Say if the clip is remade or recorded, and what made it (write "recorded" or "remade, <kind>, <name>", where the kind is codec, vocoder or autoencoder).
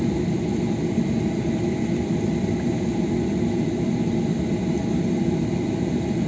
recorded